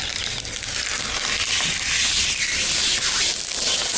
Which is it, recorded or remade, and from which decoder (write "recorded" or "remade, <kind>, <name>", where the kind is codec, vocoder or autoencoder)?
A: recorded